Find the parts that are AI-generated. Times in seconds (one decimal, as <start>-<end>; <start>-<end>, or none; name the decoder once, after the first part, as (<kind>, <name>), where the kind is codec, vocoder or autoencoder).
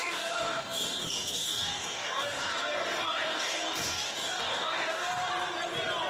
0.0-5.3 (codec, DAC)